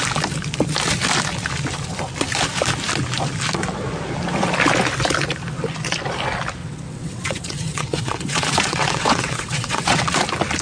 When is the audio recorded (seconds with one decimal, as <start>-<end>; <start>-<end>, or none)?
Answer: 0.0-6.6; 10.0-10.6